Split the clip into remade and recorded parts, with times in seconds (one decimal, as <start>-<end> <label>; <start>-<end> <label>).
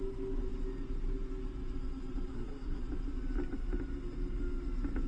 0.0-2.3 recorded; 2.3-2.8 remade; 2.8-5.1 recorded